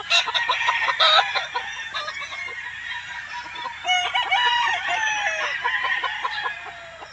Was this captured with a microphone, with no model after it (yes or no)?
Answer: yes